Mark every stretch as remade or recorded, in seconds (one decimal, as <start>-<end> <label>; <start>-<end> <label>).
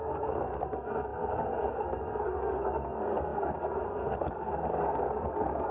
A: 0.0-5.7 remade